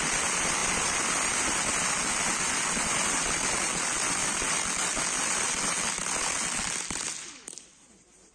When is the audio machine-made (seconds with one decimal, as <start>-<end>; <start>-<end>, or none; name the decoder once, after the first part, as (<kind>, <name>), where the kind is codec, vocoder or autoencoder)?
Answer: none